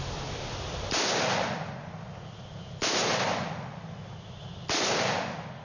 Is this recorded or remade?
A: recorded